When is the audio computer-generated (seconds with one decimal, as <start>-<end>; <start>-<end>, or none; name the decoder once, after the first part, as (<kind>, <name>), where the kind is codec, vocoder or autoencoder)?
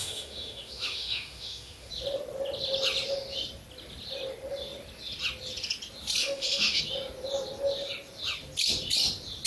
0.0-1.9 (autoencoder, DAC-VAE); 6.2-6.8